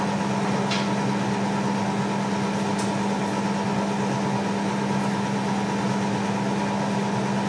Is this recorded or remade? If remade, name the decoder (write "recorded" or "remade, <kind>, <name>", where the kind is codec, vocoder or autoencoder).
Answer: recorded